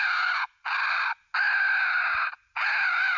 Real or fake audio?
real